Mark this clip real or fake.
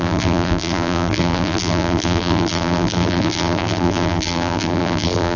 fake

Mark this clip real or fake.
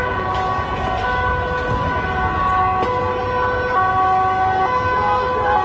real